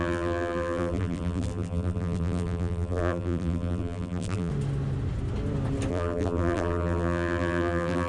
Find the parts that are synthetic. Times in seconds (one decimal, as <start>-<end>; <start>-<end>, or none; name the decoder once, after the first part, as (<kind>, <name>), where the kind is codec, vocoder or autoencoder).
0.0-4.5 (vocoder, BigVGAN v2); 5.9-8.1